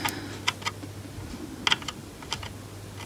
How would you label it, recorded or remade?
recorded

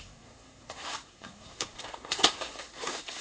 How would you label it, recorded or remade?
remade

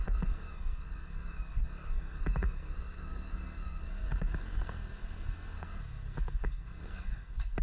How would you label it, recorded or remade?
remade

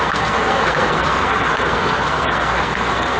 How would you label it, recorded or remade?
remade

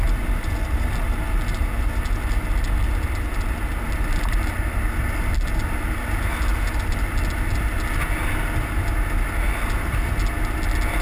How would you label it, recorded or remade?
recorded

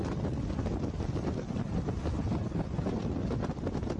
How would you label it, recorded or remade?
recorded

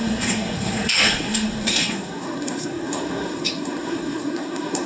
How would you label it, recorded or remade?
remade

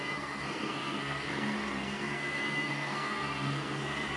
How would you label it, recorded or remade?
remade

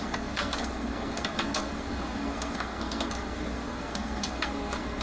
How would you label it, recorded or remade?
remade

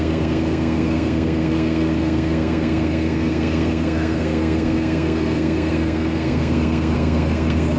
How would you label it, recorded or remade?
remade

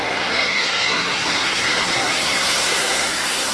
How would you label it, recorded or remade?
remade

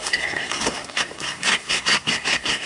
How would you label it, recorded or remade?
remade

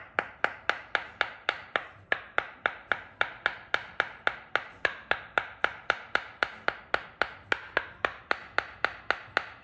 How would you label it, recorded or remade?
recorded